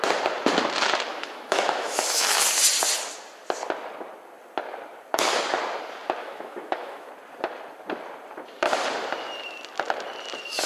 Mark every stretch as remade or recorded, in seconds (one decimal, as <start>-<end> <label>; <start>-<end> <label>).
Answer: 0.0-1.1 recorded; 1.1-2.4 remade; 2.4-6.2 recorded; 6.2-7.1 remade; 7.1-10.7 recorded